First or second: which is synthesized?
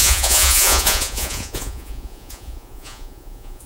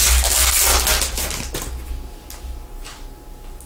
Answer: first